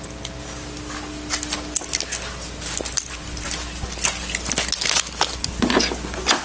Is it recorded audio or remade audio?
recorded